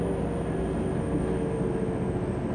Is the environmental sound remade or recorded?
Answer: recorded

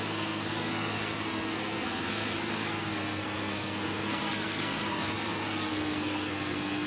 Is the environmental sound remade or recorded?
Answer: remade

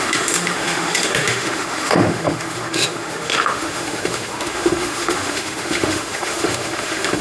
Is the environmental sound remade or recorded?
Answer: remade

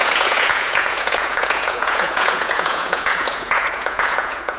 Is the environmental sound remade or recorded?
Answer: remade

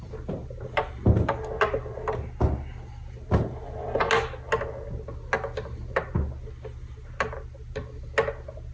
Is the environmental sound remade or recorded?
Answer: recorded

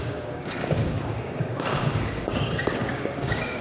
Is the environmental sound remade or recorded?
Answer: remade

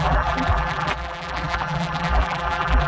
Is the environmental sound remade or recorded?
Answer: remade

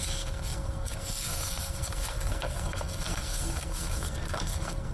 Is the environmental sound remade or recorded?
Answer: remade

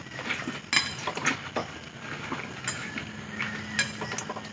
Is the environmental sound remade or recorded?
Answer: recorded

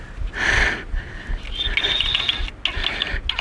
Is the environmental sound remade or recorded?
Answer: recorded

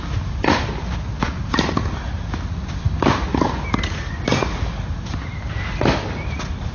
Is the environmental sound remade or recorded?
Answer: recorded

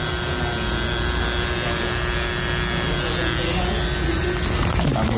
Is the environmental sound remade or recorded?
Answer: recorded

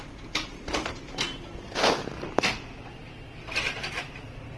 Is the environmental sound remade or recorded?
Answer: recorded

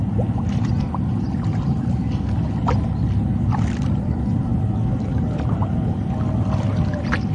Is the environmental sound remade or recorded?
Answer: recorded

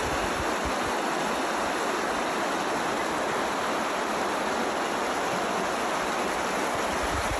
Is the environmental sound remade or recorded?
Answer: recorded